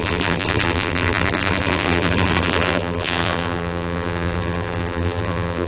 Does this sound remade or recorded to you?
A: remade